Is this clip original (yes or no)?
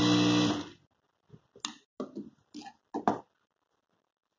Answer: yes